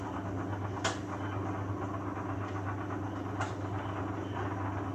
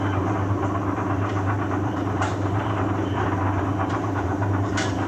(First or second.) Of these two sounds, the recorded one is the first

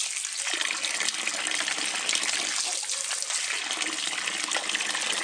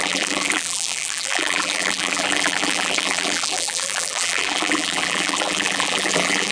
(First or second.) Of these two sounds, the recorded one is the first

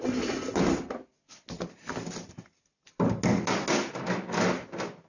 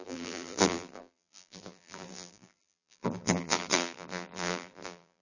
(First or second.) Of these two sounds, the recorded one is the first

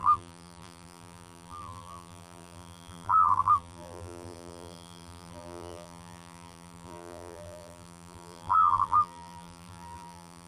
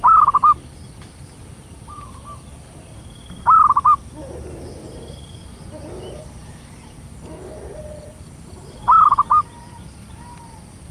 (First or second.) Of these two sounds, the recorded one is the second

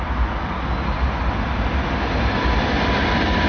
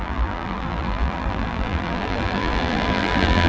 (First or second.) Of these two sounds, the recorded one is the first